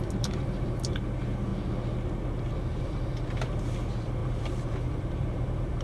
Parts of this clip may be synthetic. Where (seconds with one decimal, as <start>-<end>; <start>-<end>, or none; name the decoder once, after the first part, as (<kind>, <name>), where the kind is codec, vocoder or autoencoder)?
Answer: 0.0-1.5 (vocoder, BigVGAN v2); 2.8-5.8